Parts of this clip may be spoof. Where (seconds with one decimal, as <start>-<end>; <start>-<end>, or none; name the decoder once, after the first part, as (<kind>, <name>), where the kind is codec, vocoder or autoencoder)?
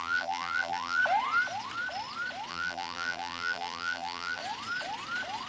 0.0-1.0 (vocoder, BigVGAN v2); 2.5-4.4